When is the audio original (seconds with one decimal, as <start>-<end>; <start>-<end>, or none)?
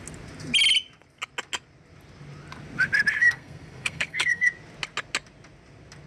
0.0-3.2; 4.5-6.1